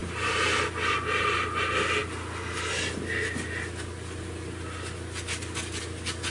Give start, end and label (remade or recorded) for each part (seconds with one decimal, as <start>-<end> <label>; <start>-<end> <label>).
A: 0.0-0.6 remade; 0.6-6.3 recorded